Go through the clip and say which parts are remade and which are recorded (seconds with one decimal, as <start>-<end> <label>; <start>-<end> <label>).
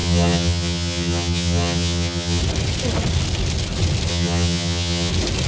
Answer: 0.0-2.4 remade; 2.4-4.1 recorded; 4.1-5.1 remade; 5.1-5.5 recorded